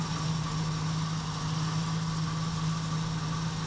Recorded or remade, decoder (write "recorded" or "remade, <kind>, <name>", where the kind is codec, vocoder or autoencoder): recorded